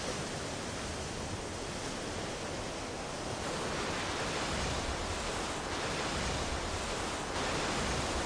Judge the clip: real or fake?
real